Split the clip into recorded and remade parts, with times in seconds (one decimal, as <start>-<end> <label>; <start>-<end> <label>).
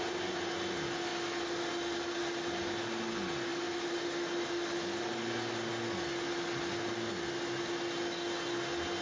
0.0-9.0 recorded